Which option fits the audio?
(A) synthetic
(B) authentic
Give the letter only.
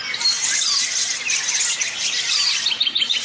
B